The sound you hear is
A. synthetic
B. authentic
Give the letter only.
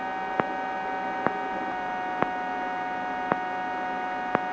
B